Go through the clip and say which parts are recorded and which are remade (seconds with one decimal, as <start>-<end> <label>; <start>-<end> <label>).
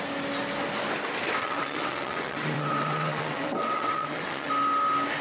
0.0-1.4 recorded; 1.4-4.5 remade; 4.5-5.2 recorded